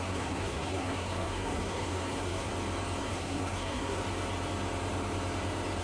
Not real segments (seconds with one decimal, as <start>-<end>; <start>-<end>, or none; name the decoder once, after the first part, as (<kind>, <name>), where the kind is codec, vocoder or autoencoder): 0.0-2.5 (codec, SNAC); 3.0-4.0